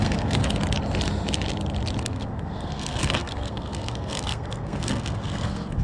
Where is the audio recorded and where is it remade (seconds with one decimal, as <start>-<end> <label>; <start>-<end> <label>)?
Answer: 0.0-0.4 remade; 0.4-2.0 recorded; 2.0-5.8 remade